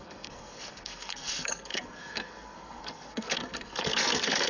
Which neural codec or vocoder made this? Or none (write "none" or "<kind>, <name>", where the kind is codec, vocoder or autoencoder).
codec, SNAC